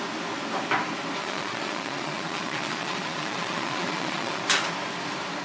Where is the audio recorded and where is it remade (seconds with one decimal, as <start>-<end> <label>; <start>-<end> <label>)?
0.0-1.2 recorded; 1.2-4.4 remade; 4.4-5.4 recorded